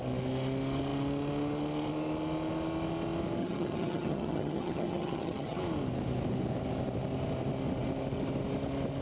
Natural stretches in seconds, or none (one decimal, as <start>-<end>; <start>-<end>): 0.0-3.4; 5.6-9.0

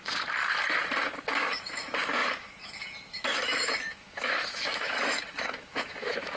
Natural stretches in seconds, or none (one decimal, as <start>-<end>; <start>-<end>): 0.0-1.4

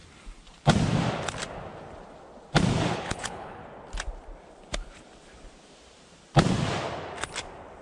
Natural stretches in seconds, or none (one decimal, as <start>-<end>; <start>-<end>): 0.0-2.9; 3.6-7.8

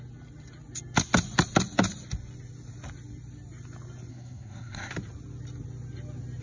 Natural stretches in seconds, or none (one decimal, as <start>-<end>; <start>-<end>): 0.0-4.1; 4.9-6.4

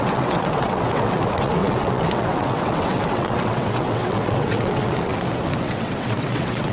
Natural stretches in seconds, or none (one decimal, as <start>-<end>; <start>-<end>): 5.1-5.6